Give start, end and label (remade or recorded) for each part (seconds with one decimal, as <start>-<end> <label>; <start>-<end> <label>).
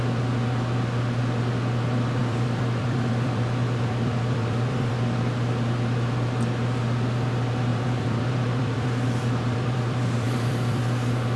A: 0.0-2.2 recorded; 2.2-4.9 remade; 4.9-7.7 recorded; 7.7-10.8 remade; 10.8-11.4 recorded